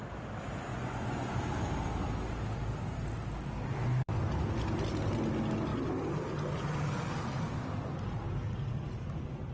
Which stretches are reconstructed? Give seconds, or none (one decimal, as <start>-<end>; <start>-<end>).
0.7-1.4